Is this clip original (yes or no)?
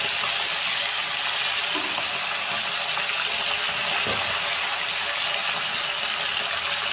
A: yes